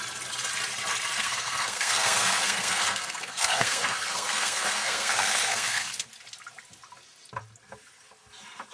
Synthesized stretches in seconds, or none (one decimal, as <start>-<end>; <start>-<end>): 1.2-6.1